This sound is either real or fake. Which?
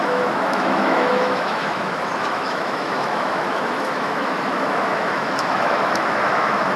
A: fake